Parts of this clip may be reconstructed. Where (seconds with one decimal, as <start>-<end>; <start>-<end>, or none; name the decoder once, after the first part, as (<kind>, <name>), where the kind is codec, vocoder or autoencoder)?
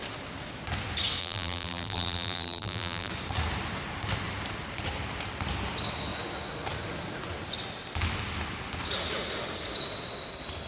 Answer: 1.2-3.1 (vocoder, BigVGAN v2)